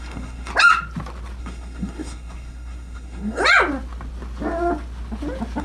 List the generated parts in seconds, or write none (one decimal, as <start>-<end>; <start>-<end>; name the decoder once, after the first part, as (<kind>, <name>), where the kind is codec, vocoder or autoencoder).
0.0-0.5 (codec, SNAC); 1.4-3.4